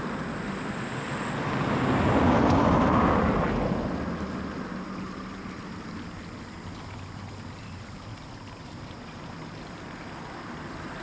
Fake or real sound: real